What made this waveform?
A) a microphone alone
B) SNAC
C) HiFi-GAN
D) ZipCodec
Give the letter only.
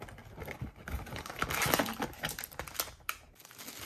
A